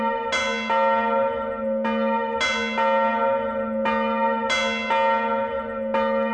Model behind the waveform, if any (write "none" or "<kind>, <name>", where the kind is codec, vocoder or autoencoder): none